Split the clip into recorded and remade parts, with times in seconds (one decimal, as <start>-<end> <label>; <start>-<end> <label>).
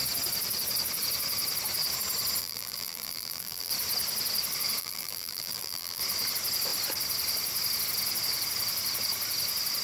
0.0-2.4 recorded; 2.4-3.7 remade; 3.7-4.8 recorded; 4.8-6.0 remade; 6.0-9.8 recorded